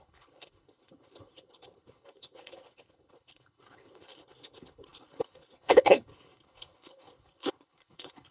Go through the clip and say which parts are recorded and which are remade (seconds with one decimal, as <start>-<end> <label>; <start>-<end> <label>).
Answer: 0.0-8.3 remade